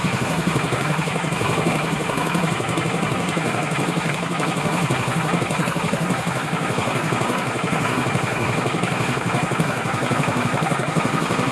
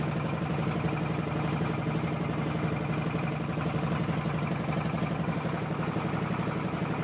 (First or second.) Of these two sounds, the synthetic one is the first